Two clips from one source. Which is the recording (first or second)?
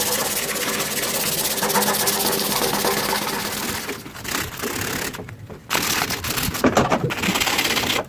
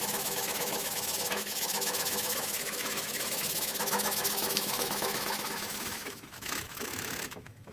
first